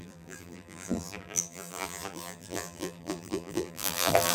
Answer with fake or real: fake